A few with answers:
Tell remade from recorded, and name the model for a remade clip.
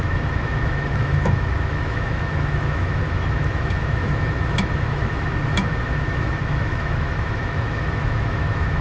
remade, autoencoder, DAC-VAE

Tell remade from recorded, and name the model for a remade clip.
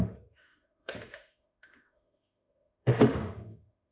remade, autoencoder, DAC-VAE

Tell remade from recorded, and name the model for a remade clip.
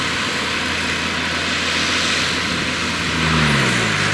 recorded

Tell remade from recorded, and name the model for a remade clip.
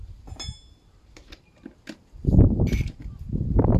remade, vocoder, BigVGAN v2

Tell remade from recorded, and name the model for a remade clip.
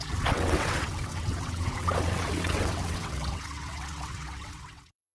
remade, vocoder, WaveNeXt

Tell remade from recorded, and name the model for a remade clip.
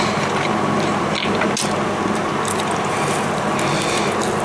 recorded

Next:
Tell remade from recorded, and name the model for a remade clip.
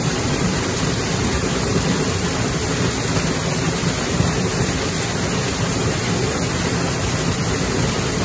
remade, vocoder, BigVGAN v2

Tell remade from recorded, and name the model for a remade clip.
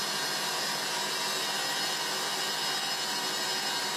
recorded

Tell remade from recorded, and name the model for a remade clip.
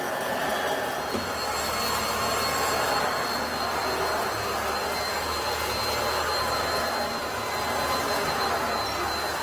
recorded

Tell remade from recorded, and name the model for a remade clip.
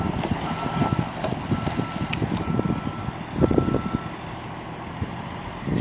recorded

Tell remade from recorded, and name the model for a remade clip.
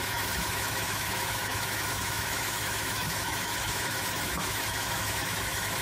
remade, autoencoder, DAC-VAE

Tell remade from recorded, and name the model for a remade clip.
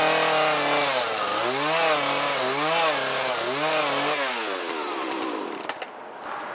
recorded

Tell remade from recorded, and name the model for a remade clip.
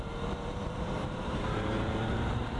remade, vocoder, BigVGAN v2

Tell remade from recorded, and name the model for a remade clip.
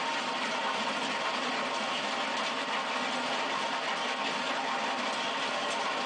recorded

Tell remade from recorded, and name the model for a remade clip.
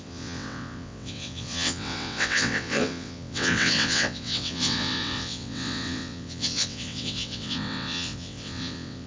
remade, vocoder, WaveNeXt